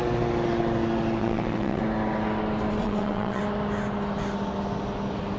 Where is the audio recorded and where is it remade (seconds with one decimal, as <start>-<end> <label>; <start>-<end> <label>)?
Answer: 0.0-1.2 recorded; 1.2-1.8 remade; 1.8-2.8 recorded; 2.8-3.4 remade; 3.4-5.4 recorded